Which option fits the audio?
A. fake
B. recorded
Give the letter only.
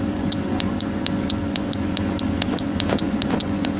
A